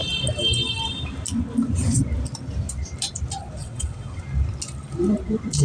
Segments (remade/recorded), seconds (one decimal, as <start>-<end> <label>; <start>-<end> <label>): 0.0-3.6 recorded; 3.6-4.2 remade; 4.2-5.6 recorded